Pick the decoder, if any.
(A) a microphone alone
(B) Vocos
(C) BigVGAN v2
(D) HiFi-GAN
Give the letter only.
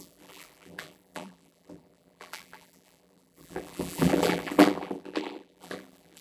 C